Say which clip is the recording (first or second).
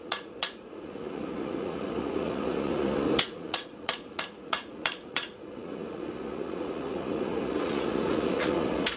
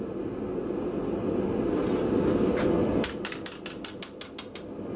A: second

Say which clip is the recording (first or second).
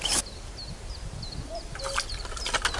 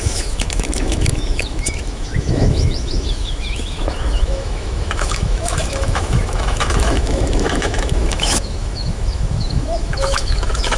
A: first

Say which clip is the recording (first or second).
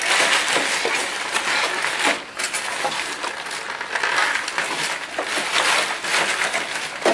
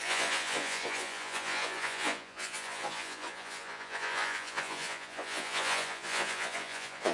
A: first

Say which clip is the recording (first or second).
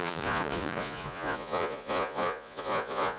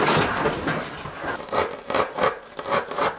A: second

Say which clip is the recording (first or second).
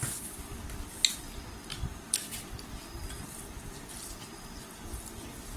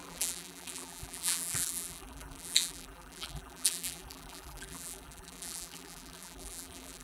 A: first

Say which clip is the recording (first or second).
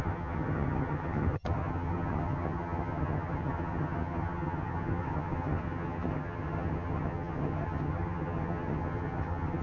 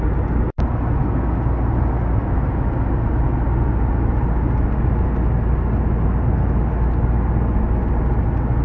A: second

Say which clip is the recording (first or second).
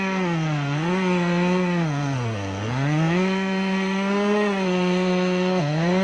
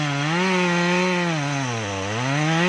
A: second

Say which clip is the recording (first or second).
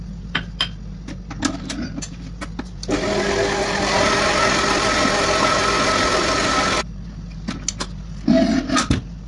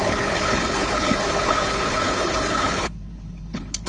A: first